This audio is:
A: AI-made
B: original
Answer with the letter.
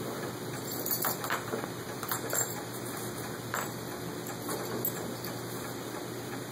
B